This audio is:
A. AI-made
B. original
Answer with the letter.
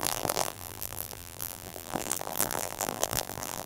A